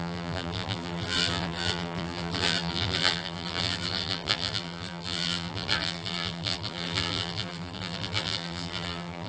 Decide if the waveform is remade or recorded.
remade